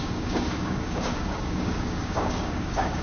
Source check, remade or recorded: remade